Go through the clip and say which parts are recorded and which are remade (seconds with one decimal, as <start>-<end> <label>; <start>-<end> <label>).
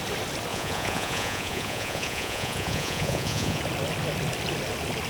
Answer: 0.0-0.5 recorded; 0.5-3.6 remade; 3.6-5.1 recorded